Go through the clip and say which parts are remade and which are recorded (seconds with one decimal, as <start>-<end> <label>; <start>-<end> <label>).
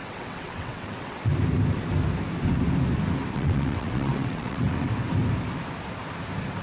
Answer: 0.0-1.3 remade; 1.3-3.3 recorded; 3.3-4.9 remade; 4.9-6.6 recorded